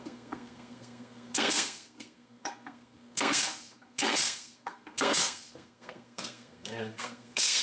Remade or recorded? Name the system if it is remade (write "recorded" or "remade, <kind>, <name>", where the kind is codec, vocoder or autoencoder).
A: remade, codec, SNAC